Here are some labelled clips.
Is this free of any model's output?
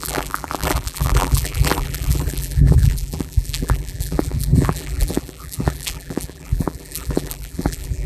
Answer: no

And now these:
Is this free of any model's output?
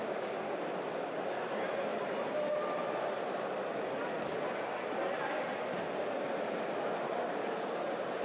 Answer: yes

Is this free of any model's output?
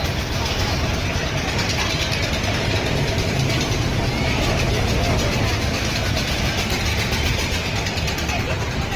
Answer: yes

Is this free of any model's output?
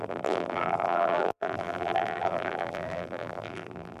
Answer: no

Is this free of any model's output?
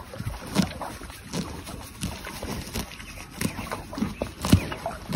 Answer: yes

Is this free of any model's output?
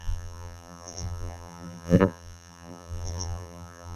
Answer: no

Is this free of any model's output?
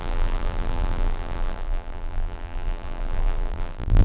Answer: no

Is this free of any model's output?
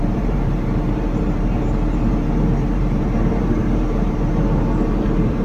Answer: no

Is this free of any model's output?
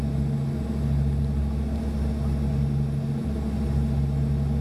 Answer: yes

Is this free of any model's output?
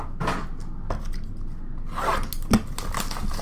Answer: yes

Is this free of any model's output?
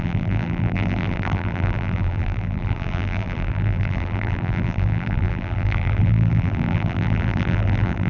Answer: no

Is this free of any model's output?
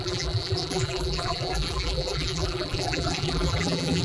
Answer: no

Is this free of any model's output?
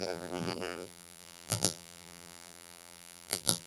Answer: no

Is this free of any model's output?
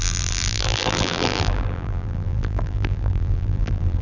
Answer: no